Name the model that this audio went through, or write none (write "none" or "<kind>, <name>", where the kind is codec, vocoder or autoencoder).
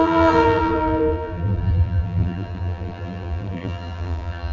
vocoder, BigVGAN v2